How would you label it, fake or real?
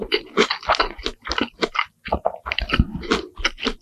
real